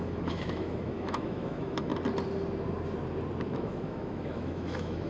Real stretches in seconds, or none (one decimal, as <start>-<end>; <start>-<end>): 1.9-3.5